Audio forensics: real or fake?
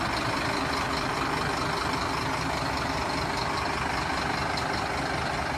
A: real